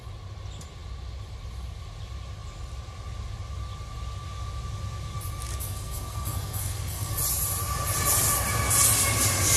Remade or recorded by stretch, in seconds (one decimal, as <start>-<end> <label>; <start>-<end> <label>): 0.0-5.5 recorded; 5.5-7.1 remade; 7.1-9.6 recorded